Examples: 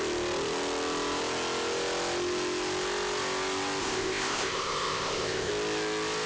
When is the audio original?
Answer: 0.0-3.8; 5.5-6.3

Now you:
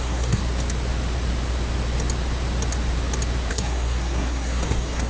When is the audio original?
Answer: 0.4-3.5